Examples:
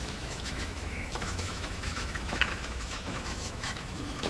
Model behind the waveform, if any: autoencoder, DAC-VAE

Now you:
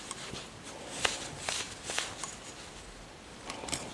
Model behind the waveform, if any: none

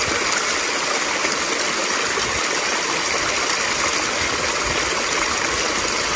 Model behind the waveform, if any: none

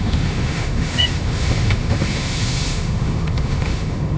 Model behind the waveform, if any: autoencoder, DAC-VAE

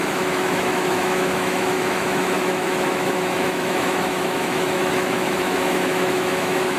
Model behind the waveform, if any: autoencoder, DAC-VAE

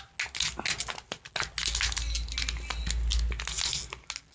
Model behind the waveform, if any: none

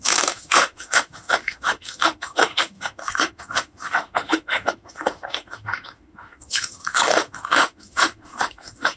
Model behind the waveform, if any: autoencoder, DAC-VAE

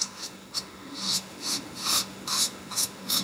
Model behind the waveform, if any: autoencoder, DAC-VAE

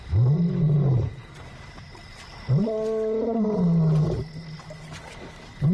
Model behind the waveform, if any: none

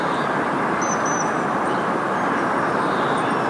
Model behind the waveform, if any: none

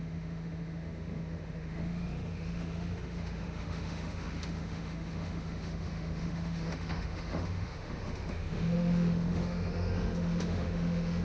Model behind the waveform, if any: autoencoder, DAC-VAE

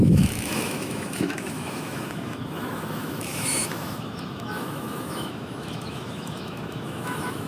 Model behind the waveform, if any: autoencoder, DAC-VAE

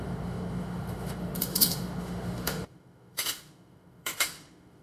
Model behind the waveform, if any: autoencoder, DAC-VAE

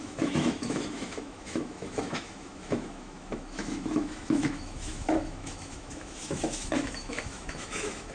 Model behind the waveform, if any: autoencoder, DAC-VAE